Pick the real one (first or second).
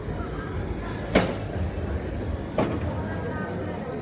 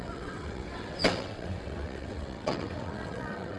first